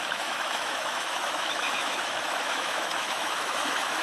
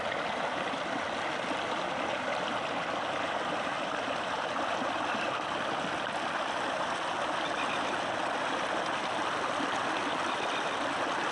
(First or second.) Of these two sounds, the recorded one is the second